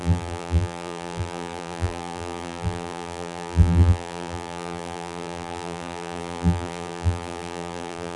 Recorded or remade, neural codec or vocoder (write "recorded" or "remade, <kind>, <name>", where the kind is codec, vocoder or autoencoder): remade, vocoder, BigVGAN v2